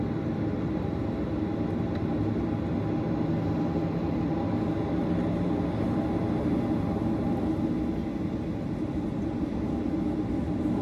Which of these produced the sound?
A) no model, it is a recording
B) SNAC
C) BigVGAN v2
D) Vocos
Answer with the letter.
A